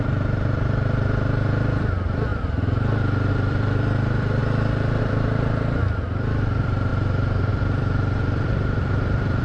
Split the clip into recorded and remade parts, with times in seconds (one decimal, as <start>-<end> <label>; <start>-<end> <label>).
0.0-4.4 remade; 4.4-5.0 recorded; 5.0-6.9 remade; 6.9-7.5 recorded; 7.5-9.4 remade